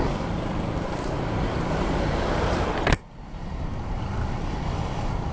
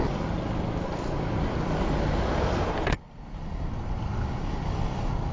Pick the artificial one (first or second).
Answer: first